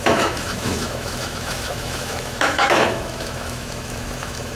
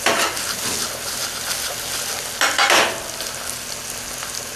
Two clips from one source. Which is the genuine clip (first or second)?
second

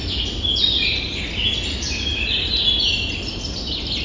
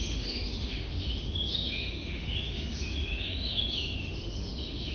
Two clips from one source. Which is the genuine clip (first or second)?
first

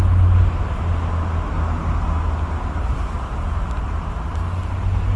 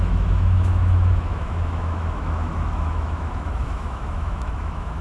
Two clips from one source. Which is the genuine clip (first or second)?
first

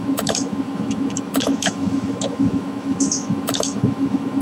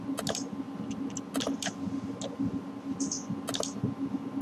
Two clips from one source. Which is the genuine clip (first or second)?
second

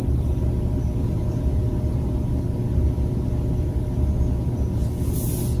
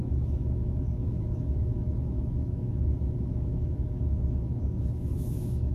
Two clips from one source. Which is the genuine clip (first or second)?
first